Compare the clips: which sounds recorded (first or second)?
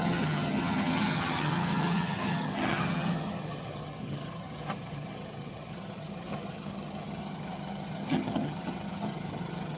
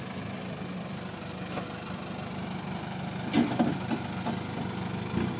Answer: second